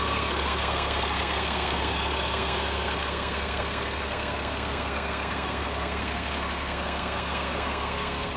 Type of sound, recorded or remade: remade